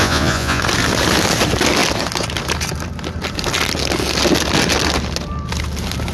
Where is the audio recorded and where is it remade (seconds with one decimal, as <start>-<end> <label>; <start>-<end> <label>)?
0.0-0.6 remade; 0.6-6.1 recorded